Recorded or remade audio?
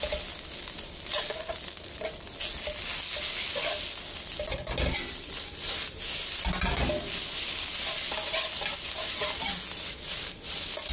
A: recorded